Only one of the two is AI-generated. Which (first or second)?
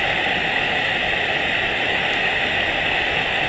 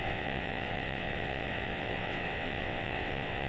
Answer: second